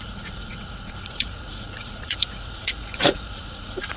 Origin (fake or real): fake